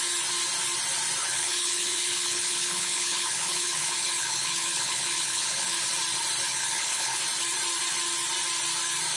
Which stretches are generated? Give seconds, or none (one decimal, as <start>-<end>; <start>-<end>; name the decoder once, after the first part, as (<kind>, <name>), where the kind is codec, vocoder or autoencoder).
1.2-5.8 (codec, HILCodec); 6.5-7.2